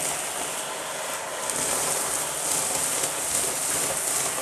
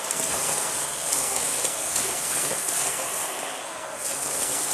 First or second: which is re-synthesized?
second